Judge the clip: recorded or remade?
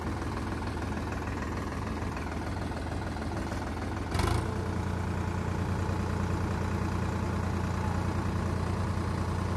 recorded